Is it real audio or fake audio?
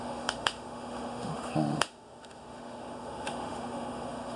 fake